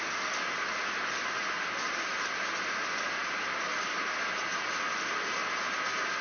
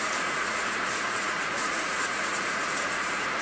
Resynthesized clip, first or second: second